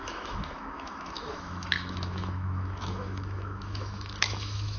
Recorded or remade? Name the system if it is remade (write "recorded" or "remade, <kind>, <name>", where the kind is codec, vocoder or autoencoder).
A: remade, autoencoder, DAC-VAE